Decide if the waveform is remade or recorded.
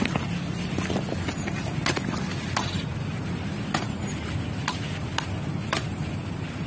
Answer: recorded